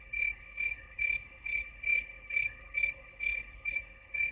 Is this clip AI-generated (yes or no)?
yes